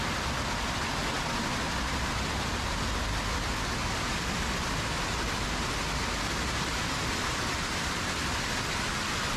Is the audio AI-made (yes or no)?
no